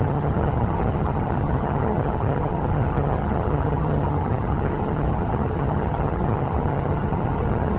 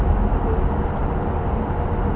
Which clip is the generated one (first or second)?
first